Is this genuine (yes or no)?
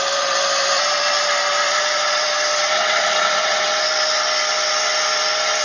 no